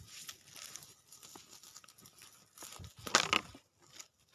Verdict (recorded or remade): recorded